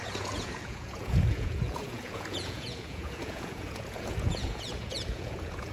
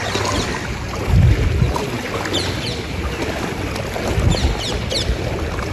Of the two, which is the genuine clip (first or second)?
second